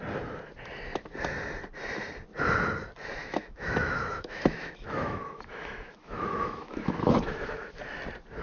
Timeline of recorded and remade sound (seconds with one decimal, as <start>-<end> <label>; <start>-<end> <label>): 0.0-3.2 recorded; 3.2-7.8 remade; 7.8-8.4 recorded